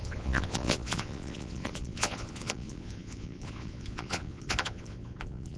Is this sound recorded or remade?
remade